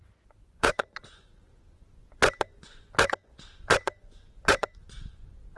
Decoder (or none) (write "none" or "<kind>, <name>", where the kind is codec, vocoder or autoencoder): vocoder, Vocos